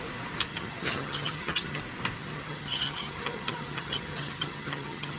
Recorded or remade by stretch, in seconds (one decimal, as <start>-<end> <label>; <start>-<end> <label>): 0.0-0.5 recorded; 0.5-1.8 remade; 1.8-2.2 recorded; 2.2-5.2 remade